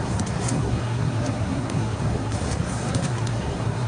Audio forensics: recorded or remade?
remade